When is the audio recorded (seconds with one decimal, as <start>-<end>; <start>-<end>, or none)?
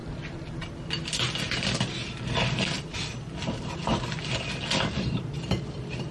0.0-6.1